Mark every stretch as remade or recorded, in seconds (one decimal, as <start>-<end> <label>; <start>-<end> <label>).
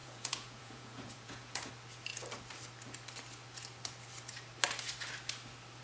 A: 0.0-1.7 remade; 1.7-5.8 recorded